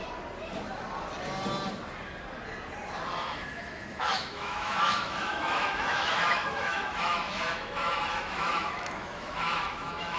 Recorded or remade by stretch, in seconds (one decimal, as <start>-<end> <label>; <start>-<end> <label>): 0.0-3.2 recorded; 3.2-10.2 remade